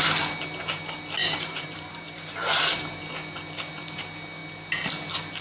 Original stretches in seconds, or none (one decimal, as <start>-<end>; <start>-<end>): 0.0-1.2; 3.0-5.4